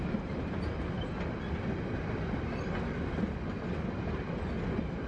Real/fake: real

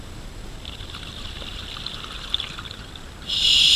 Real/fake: fake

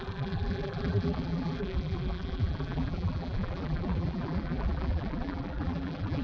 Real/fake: fake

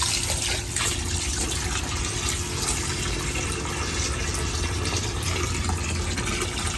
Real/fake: real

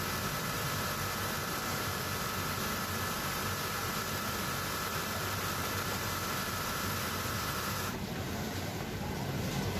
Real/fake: fake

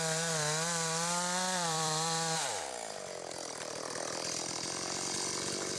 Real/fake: fake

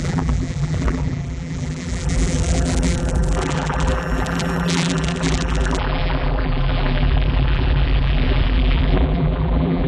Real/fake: fake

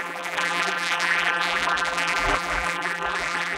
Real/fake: fake